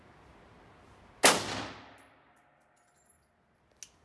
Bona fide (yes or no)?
yes